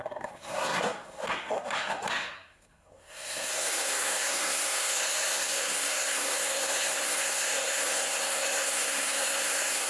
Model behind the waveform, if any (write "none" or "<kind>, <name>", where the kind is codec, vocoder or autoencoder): codec, SNAC